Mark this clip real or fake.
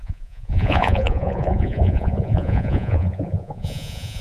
fake